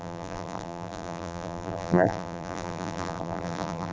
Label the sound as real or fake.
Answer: fake